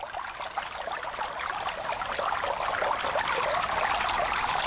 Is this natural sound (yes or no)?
yes